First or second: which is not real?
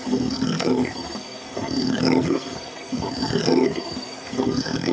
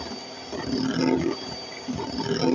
first